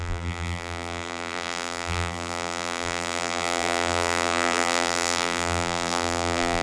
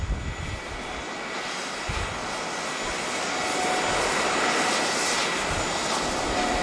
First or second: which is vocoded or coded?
first